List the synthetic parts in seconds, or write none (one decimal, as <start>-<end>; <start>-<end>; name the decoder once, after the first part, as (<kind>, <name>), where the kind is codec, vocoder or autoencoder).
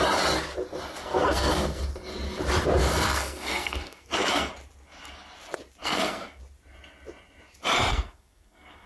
1.0-1.8 (codec, SNAC); 2.8-4.5; 5.8-6.4; 7.9-8.9